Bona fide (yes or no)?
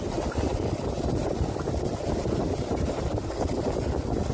yes